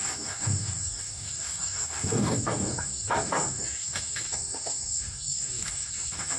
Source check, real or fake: fake